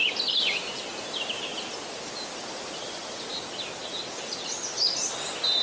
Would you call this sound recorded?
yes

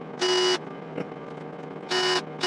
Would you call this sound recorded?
yes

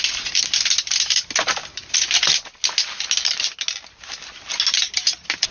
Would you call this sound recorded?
yes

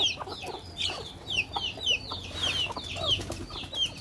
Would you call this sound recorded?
yes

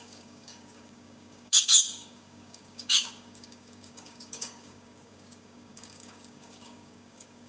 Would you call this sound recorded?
no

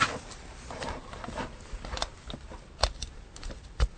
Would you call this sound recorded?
yes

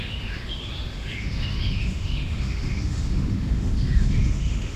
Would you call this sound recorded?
no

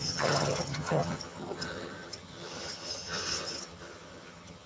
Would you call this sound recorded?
no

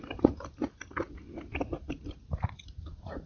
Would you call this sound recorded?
yes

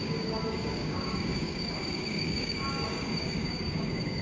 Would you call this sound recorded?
no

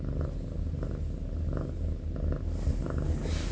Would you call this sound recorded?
yes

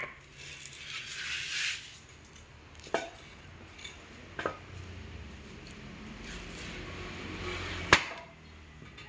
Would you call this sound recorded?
yes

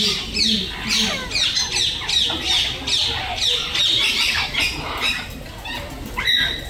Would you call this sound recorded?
yes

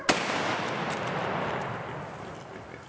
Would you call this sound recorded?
yes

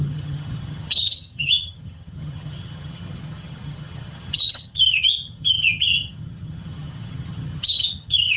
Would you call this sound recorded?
no